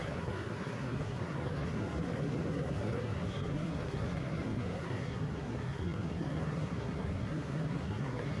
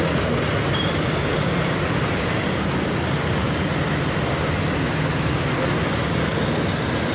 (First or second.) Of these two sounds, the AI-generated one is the first